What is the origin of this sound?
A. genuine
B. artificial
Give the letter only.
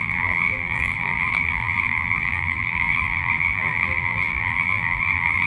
B